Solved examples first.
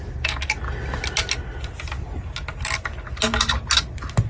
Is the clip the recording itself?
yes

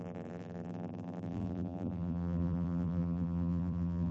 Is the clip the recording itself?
no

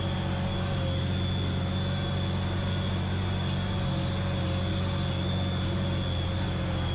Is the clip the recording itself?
yes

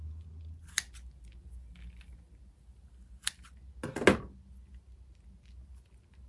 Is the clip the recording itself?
yes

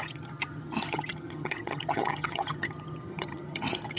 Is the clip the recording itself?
no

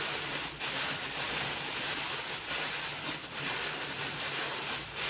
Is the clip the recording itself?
yes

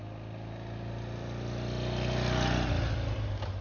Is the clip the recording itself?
yes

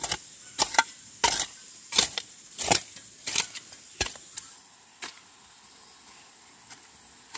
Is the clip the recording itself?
yes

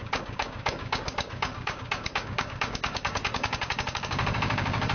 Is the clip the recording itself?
no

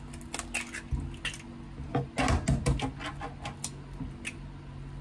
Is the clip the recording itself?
yes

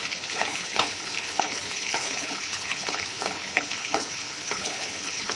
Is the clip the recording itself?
no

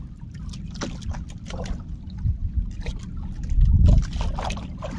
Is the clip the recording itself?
yes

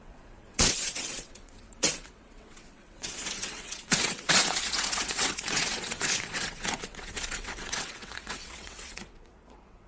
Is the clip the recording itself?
no